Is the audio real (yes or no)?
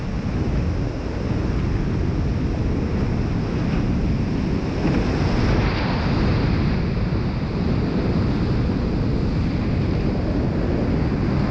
yes